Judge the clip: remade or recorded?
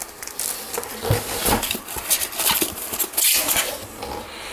recorded